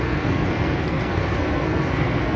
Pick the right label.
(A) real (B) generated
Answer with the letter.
B